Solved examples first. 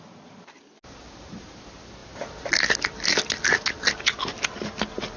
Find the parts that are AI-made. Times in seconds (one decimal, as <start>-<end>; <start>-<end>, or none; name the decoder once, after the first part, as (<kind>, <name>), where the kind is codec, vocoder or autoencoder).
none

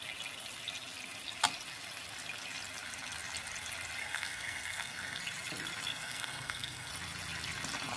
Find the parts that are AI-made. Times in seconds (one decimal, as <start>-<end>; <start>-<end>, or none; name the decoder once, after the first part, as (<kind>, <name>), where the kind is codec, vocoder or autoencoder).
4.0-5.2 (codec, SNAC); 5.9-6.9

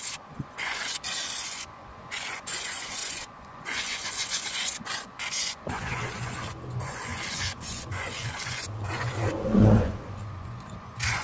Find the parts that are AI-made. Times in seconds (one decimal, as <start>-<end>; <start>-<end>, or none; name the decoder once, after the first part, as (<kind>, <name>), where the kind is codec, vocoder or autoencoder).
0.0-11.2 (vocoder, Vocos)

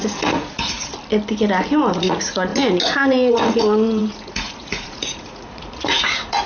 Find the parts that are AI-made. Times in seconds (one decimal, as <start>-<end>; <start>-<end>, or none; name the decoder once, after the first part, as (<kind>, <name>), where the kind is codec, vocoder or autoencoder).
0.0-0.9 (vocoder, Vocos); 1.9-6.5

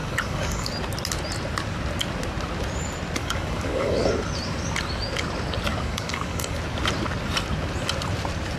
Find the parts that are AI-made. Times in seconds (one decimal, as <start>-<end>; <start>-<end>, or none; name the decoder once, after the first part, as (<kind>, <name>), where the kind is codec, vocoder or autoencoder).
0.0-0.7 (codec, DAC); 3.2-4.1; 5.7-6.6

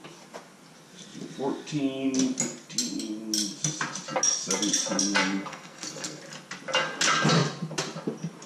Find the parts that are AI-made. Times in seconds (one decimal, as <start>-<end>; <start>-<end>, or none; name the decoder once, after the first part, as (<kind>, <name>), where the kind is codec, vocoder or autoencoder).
5.2-6.2 (codec, SNAC)

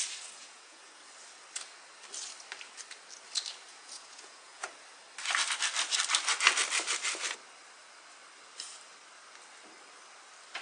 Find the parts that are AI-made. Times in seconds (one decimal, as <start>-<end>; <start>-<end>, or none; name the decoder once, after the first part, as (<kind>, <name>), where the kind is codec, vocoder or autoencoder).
0.4-1.0 (vocoder, Vocos); 3.7-4.7

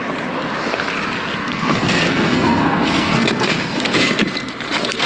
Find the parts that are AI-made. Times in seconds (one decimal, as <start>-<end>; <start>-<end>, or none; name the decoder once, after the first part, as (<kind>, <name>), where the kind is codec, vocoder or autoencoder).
1.4-4.2 (codec, SNAC)